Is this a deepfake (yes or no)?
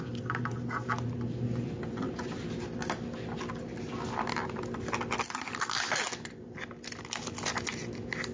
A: no